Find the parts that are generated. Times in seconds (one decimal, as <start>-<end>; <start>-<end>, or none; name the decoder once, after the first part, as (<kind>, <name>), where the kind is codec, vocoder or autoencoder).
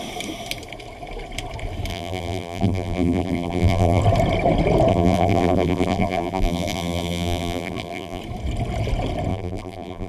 1.9-4.0 (vocoder, BigVGAN v2); 4.9-8.2; 9.3-10.1